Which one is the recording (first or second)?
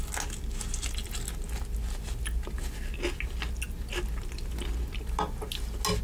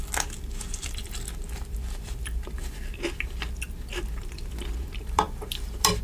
first